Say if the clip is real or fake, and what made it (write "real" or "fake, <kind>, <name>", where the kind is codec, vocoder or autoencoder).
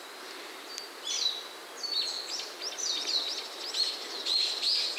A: real